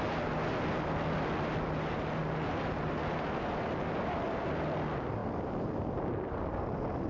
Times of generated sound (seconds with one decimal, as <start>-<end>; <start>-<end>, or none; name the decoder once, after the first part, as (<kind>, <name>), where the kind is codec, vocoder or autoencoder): none

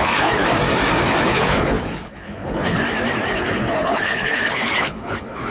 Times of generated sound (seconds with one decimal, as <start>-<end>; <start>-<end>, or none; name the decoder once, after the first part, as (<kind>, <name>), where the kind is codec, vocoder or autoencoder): 0.0-0.4 (codec, HILCodec); 1.2-2.8; 3.3-5.5

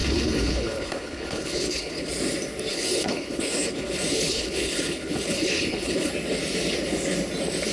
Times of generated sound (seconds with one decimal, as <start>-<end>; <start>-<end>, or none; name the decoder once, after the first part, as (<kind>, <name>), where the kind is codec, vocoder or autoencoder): 0.0-2.1 (codec, HILCodec); 2.7-6.1